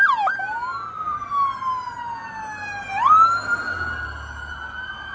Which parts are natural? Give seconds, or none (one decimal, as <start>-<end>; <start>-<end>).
0.0-0.7; 1.3-5.1